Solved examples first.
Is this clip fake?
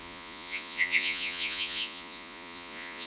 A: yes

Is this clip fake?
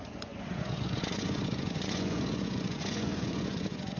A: yes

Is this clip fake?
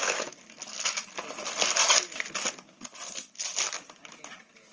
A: no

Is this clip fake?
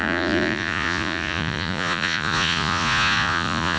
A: yes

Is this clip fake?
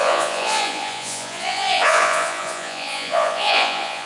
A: yes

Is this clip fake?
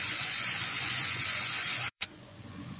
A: yes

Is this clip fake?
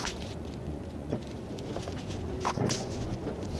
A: yes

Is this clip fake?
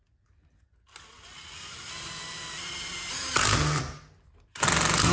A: no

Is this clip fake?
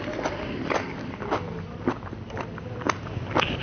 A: no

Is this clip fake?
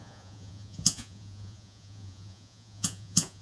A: yes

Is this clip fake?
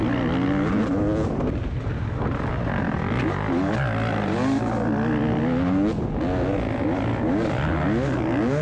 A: no